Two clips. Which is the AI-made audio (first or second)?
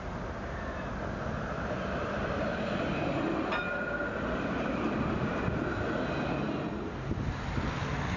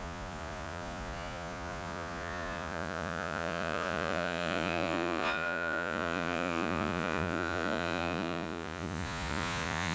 second